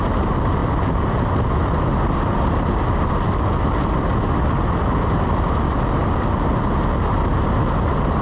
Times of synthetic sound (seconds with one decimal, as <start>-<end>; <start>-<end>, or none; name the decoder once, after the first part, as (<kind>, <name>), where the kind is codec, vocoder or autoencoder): none